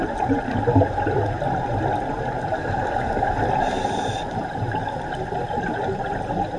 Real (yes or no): yes